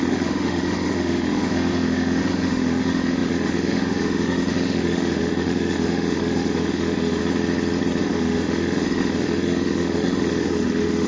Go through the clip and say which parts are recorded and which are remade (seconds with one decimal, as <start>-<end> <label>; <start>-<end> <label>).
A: 0.0-7.2 remade; 7.2-8.0 recorded; 8.0-11.1 remade